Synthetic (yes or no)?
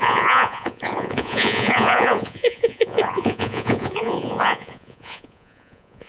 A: yes